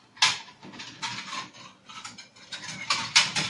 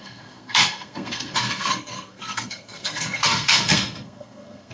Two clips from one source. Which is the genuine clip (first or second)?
first